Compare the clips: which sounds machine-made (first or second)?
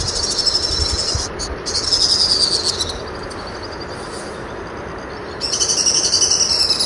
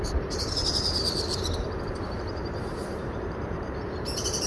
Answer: second